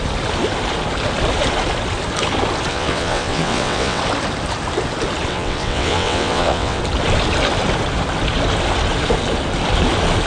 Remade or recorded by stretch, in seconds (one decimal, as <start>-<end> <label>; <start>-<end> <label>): 0.0-2.7 recorded; 2.7-4.0 remade; 4.0-5.3 recorded; 5.3-6.8 remade; 6.8-10.3 recorded